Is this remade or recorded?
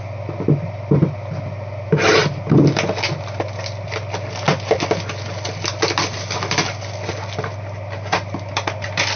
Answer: recorded